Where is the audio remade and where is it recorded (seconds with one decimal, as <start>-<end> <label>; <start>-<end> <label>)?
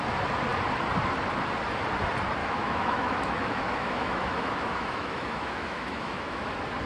0.0-2.4 recorded; 2.4-6.5 remade; 6.5-6.9 recorded